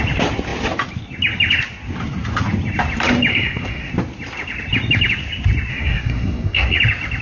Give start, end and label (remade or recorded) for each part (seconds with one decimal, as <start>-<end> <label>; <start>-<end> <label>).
0.0-3.3 recorded; 3.3-3.9 remade; 3.9-5.7 recorded; 5.7-6.8 remade; 6.8-7.2 recorded